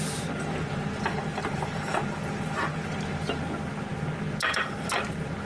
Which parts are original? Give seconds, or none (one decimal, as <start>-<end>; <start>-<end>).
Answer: 0.0-5.5